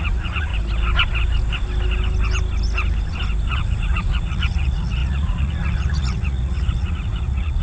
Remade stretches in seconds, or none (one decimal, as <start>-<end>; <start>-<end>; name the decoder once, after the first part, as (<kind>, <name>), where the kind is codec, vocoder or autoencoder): 0.0-0.5 (vocoder, Vocos); 3.5-7.6